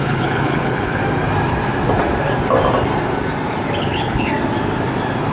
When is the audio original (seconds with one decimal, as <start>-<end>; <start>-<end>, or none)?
1.0-3.8; 4.3-5.3